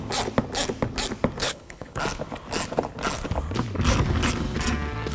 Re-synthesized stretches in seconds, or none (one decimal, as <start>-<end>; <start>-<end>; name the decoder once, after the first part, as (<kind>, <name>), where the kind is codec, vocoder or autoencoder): 1.4-2.0 (codec, HILCodec)